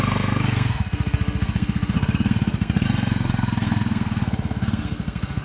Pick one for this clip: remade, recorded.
remade